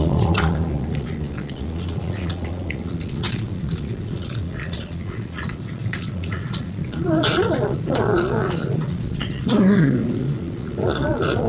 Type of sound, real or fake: fake